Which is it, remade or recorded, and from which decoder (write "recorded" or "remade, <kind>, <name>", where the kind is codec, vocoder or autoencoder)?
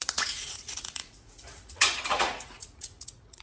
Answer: remade, vocoder, Vocos